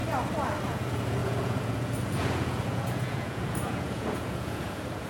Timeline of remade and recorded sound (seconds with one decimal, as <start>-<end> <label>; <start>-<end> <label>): 0.0-0.6 recorded; 0.6-5.1 remade